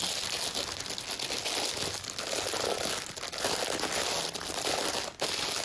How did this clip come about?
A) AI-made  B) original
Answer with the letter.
B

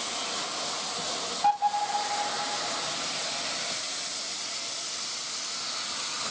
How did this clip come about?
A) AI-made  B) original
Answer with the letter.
B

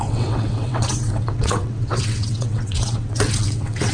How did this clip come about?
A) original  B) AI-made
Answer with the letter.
B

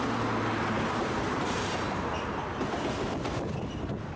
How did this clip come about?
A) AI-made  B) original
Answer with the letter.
B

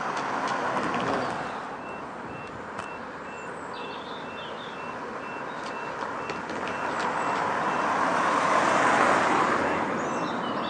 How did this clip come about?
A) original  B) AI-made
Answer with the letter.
A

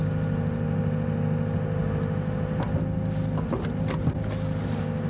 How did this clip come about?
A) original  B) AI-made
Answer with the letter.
A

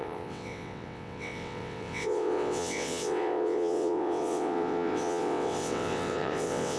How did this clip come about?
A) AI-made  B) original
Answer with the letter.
A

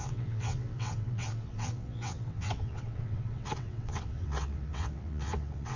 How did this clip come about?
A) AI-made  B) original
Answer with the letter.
A